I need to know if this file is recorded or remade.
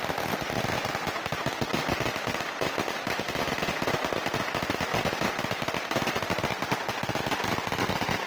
recorded